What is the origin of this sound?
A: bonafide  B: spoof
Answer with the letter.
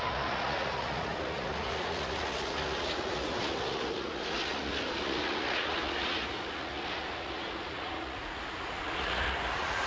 B